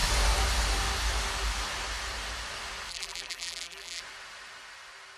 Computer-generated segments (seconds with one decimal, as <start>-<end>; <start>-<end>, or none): 2.9-4.0